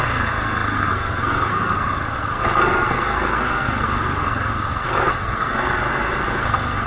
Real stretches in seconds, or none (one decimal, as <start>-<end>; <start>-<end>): none